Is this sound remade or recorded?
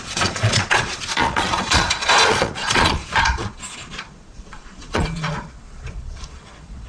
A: remade